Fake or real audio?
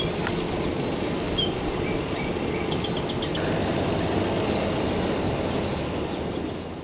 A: real